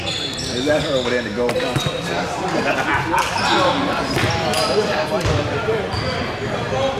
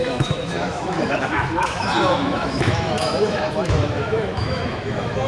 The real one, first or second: first